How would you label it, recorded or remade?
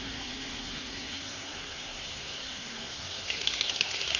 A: remade